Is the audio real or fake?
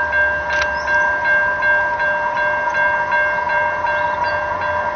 real